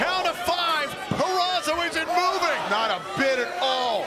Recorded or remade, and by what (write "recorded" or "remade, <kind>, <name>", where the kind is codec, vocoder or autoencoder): recorded